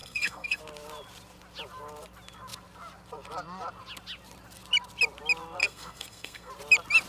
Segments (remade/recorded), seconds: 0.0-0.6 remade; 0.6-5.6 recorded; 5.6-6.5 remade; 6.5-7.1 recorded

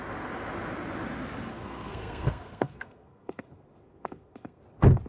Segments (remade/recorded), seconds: 0.0-1.5 recorded; 1.5-4.6 remade; 4.6-5.1 recorded

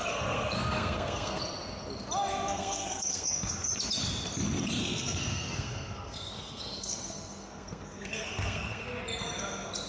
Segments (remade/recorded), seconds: 0.0-1.4 remade; 1.4-2.3 recorded; 2.3-3.5 remade; 3.5-4.8 recorded; 4.8-9.0 remade; 9.0-9.9 recorded

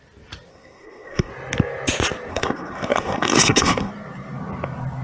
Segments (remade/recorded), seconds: 0.0-0.5 recorded; 0.5-1.3 remade; 1.3-2.3 recorded; 2.3-3.9 remade; 3.9-5.0 recorded

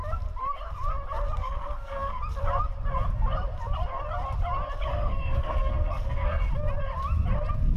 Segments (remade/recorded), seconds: 0.0-1.4 recorded; 1.4-2.2 remade; 2.2-4.9 recorded; 4.9-6.5 remade; 6.5-7.8 recorded